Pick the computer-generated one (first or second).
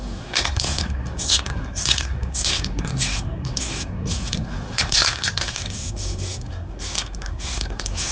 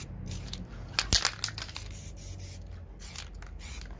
first